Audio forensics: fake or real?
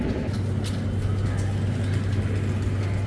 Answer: real